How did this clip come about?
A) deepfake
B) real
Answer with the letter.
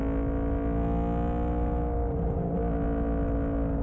B